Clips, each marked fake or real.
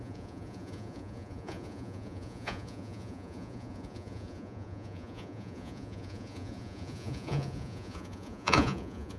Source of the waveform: fake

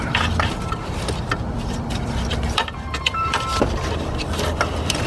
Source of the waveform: fake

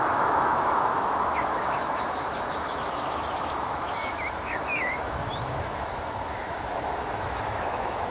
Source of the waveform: fake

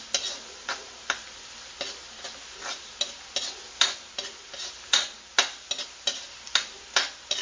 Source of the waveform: real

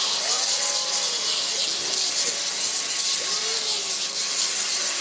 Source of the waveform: real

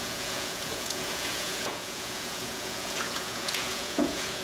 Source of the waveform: fake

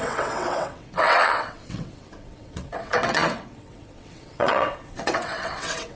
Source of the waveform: fake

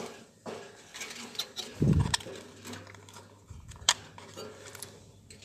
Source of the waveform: fake